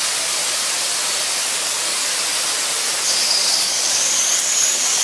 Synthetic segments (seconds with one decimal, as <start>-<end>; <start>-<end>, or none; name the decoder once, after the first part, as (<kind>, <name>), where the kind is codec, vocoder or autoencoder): 0.0-0.4 (codec, DAC); 1.4-2.1; 3.1-5.0